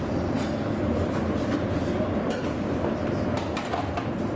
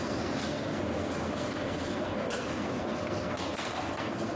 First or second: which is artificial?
second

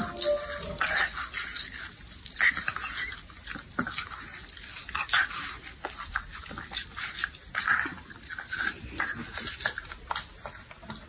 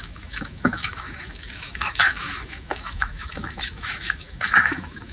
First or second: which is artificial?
second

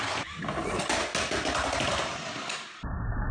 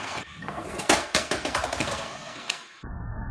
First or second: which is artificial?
second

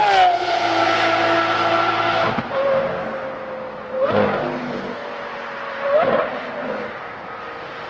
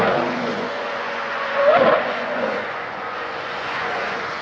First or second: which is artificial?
second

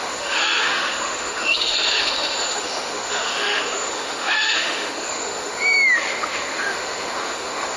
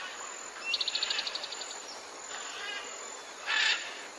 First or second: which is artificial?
first